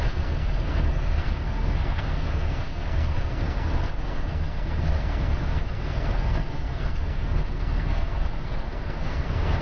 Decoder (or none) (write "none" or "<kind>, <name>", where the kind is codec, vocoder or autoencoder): codec, SNAC